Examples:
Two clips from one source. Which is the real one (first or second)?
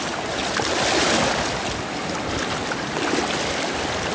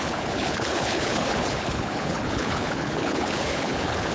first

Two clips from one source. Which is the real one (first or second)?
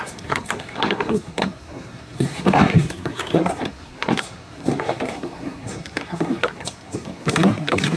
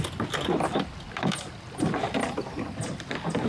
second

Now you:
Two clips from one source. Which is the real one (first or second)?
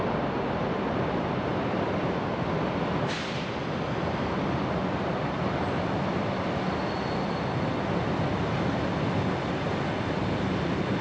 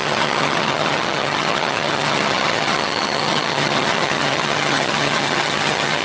first